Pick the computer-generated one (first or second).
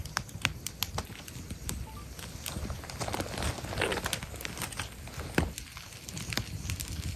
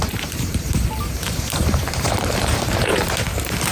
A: second